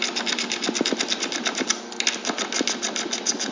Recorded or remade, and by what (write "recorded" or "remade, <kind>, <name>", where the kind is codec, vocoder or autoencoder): recorded